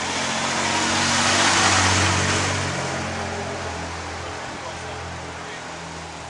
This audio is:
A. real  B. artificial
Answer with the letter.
A